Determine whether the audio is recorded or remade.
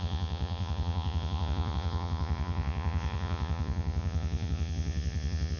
remade